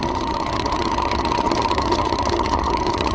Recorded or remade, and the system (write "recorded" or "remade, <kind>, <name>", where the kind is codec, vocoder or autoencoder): remade, vocoder, HiFi-GAN